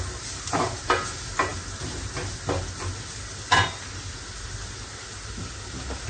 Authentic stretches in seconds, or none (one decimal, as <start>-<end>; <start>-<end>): 0.0-6.1